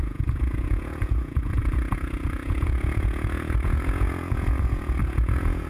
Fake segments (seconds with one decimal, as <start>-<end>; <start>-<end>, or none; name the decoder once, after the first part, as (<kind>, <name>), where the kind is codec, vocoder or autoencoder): 0.0-5.7 (vocoder, Vocos)